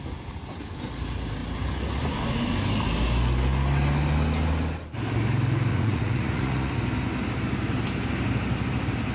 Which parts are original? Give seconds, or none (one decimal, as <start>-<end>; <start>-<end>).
0.0-5.7; 6.7-9.1